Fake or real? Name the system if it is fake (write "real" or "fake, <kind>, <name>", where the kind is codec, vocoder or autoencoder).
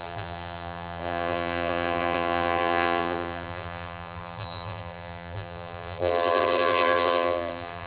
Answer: fake, vocoder, BigVGAN v2